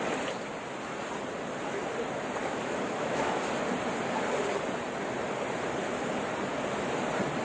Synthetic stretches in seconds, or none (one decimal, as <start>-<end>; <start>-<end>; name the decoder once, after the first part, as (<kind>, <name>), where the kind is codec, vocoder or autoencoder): 2.4-3.4 (autoencoder, DAC-VAE)